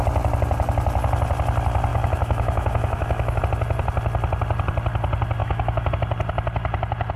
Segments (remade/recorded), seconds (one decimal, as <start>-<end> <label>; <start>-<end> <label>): 0.0-1.9 recorded; 1.9-3.4 remade; 3.4-5.4 recorded; 5.4-5.9 remade; 5.9-7.2 recorded